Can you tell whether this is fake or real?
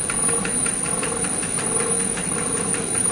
real